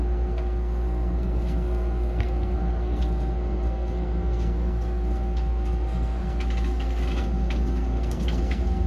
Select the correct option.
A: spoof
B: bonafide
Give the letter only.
A